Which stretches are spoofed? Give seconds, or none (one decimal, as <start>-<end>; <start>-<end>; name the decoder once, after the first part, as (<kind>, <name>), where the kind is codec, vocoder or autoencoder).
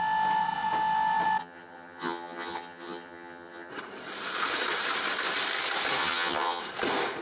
1.4-3.7 (vocoder, HiFi-GAN); 6.0-6.6